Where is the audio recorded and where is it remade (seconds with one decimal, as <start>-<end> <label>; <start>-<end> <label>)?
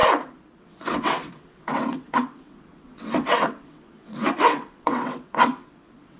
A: 0.0-0.6 recorded; 0.6-6.2 remade